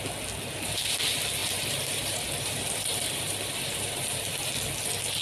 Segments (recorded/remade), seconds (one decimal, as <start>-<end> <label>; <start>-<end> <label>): 0.0-1.4 recorded; 1.4-4.5 remade; 4.5-5.2 recorded